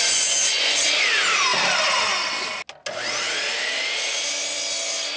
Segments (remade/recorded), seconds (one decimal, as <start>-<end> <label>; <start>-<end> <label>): 0.0-0.8 remade; 0.8-5.2 recorded